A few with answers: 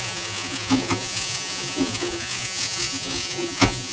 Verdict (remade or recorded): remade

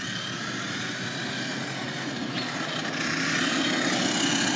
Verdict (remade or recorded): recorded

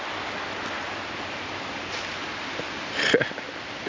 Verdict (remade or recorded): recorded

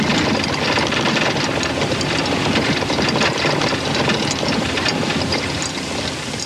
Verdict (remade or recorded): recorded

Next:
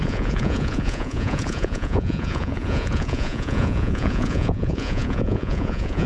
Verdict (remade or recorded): remade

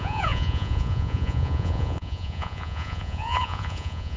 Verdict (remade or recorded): remade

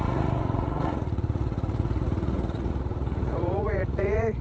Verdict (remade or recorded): remade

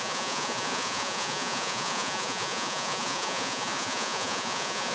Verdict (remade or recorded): remade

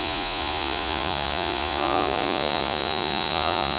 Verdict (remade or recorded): remade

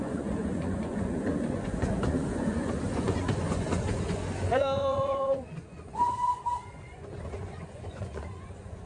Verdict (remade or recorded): remade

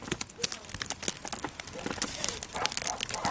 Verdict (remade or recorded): recorded